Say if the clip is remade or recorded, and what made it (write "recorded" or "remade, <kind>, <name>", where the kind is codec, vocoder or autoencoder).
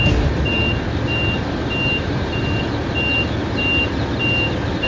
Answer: recorded